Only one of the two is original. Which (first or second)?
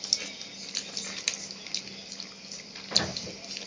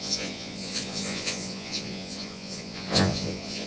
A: first